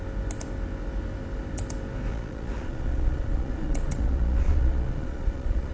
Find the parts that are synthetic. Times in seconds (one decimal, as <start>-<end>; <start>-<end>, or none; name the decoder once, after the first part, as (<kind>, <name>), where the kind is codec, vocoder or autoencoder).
2.1-5.7 (vocoder, Vocos)